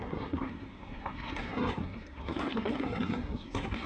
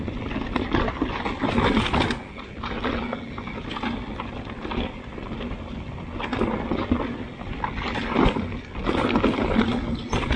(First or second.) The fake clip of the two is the first